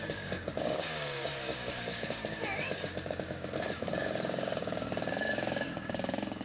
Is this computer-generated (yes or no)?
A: yes